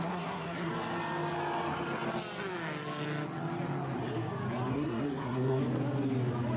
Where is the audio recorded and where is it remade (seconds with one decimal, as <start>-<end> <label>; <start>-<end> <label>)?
0.0-0.7 remade; 0.7-4.7 recorded; 4.7-5.6 remade; 5.6-6.6 recorded